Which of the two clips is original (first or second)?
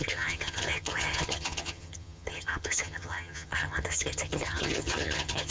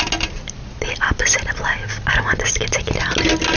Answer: second